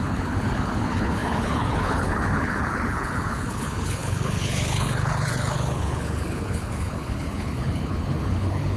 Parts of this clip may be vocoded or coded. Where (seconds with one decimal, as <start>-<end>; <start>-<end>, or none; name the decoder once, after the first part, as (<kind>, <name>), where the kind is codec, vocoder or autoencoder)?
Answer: 0.0-8.8 (codec, HILCodec)